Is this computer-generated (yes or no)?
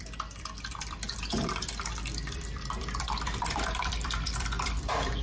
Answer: yes